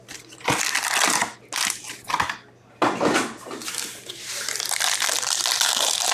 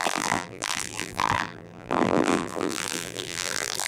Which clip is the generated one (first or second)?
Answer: second